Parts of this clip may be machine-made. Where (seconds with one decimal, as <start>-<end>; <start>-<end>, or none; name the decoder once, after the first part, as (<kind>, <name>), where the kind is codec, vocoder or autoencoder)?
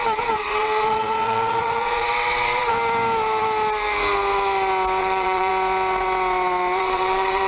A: 0.0-2.7 (vocoder, WaveNeXt); 5.0-5.5; 6.8-7.5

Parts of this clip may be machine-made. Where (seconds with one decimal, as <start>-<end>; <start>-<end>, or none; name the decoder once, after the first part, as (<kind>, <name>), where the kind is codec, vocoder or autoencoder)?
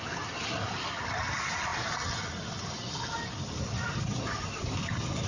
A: none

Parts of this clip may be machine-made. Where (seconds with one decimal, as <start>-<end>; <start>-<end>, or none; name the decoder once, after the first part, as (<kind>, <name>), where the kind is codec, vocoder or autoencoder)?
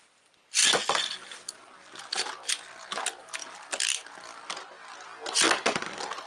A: none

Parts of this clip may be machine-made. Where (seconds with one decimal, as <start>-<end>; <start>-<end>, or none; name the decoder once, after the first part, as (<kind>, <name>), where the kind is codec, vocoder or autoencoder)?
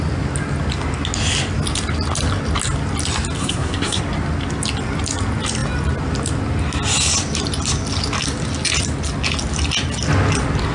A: 3.4-4.0 (codec, SNAC)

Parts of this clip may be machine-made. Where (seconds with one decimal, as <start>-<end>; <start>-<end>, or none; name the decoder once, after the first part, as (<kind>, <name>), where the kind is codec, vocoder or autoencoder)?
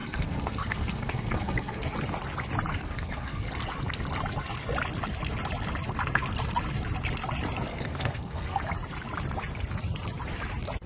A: 0.0-1.8 (codec, SNAC); 2.7-3.5; 7.7-8.6